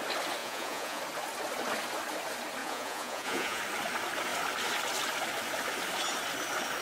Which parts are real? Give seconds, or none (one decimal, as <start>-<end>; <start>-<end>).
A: 0.0-0.4; 1.0-2.6; 3.6-6.8